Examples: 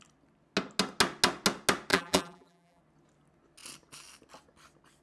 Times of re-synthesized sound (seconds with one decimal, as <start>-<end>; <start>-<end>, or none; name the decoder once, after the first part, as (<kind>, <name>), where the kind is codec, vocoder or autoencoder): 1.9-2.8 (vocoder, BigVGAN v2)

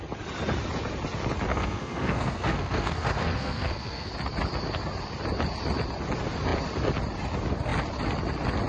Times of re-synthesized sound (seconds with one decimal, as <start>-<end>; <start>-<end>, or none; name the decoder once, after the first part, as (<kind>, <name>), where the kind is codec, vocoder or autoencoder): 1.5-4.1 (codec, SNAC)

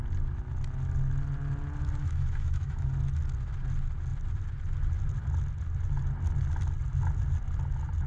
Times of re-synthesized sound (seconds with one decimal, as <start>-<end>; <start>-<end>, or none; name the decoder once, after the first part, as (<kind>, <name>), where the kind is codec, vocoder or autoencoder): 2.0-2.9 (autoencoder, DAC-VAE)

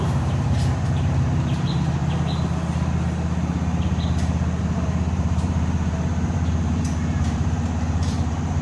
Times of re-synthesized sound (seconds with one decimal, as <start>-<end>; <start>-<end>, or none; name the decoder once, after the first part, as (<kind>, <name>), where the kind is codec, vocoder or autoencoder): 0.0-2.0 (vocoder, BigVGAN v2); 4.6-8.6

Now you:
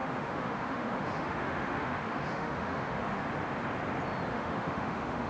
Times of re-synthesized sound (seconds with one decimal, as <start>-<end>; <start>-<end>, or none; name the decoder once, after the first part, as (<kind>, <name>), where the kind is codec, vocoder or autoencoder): 0.0-3.2 (autoencoder, DAC-VAE); 4.3-5.3

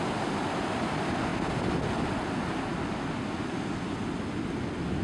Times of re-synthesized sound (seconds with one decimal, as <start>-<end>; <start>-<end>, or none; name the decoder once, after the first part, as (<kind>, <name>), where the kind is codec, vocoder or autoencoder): none